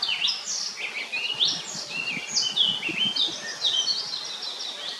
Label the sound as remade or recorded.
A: recorded